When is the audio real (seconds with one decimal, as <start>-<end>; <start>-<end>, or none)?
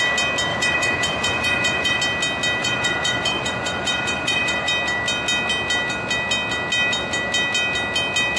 0.0-0.5; 2.0-2.6; 4.7-8.4